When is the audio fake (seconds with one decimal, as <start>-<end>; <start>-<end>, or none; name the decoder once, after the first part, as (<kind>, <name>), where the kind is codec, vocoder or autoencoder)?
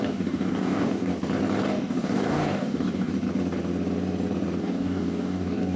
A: 0.0-1.1 (codec, DAC); 1.7-3.1; 4.6-5.8